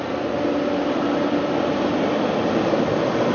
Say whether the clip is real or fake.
real